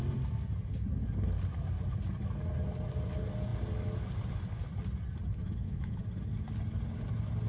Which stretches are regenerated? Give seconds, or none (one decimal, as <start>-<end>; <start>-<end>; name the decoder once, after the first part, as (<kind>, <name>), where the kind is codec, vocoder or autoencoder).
5.4-6.0 (autoencoder, DAC-VAE)